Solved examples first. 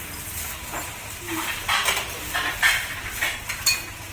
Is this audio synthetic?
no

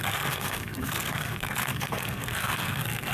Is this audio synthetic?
yes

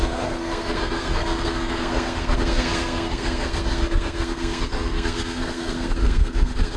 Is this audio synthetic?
yes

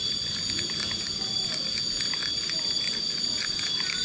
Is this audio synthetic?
no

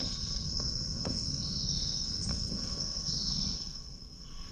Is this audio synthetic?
yes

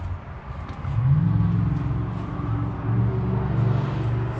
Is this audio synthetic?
no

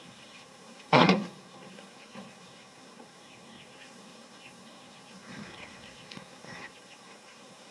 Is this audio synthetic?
yes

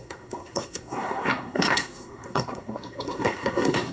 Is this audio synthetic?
yes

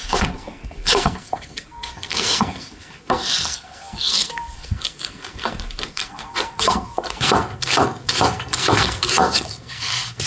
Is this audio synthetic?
yes